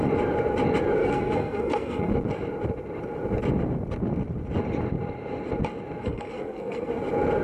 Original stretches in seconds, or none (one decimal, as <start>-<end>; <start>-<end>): 0.0-1.0; 2.1-6.0; 6.9-7.4